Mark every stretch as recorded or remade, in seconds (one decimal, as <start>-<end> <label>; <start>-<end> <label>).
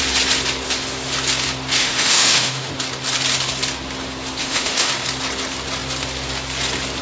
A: 0.0-1.8 recorded; 1.8-2.7 remade; 2.7-4.4 recorded; 4.4-4.9 remade; 4.9-7.0 recorded